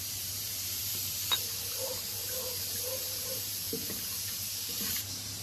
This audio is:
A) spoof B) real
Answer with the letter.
A